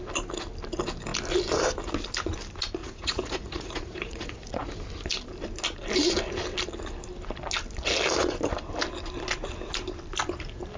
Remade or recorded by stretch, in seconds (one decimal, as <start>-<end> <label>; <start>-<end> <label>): 0.0-2.8 recorded; 2.8-4.7 remade; 4.7-10.8 recorded

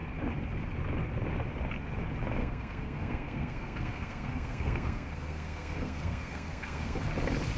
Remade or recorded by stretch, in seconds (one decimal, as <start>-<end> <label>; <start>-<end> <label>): 0.0-2.4 recorded; 2.4-7.0 remade; 7.0-7.6 recorded

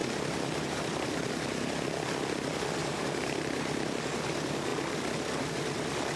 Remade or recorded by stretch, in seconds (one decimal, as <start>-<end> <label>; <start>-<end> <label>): 0.0-1.3 remade; 1.3-2.8 recorded; 2.8-4.0 remade; 4.0-6.2 recorded

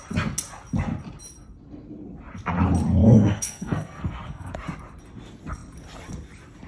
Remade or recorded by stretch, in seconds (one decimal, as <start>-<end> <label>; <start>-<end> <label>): 0.0-3.0 recorded; 3.0-4.5 remade; 4.5-6.7 recorded

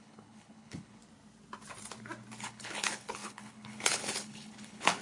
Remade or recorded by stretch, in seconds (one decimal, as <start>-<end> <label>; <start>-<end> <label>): 0.0-1.0 remade; 1.0-2.4 recorded; 2.4-5.0 remade

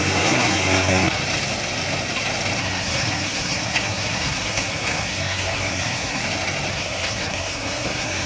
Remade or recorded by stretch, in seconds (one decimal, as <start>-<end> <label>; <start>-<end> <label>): 0.0-1.2 remade; 1.2-2.6 recorded; 2.6-6.2 remade; 6.2-6.7 recorded; 6.7-8.3 remade